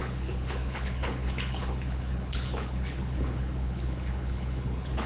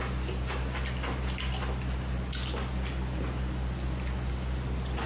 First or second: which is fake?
first